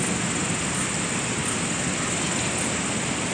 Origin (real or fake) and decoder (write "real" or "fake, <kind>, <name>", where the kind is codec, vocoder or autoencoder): real